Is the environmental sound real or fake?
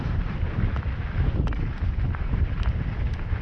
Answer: fake